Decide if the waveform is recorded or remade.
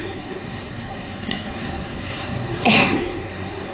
remade